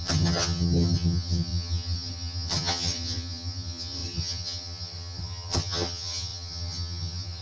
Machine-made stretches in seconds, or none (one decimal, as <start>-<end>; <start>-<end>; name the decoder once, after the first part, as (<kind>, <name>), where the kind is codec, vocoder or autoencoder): 0.0-7.4 (vocoder, HiFi-GAN)